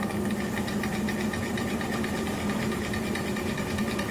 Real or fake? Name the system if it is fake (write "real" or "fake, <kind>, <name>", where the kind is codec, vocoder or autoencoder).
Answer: real